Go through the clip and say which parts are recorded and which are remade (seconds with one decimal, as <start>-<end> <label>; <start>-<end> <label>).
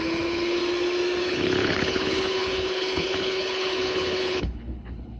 0.0-0.6 remade; 0.6-1.2 recorded; 1.2-5.2 remade